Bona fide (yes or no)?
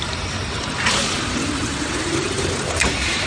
no